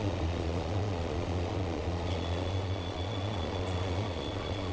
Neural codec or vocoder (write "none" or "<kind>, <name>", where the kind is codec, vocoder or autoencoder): vocoder, Vocos